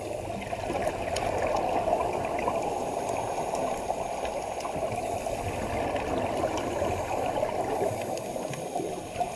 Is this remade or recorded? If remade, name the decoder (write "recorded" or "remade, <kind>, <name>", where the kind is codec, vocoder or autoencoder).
recorded